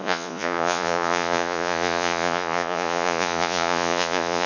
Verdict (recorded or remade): remade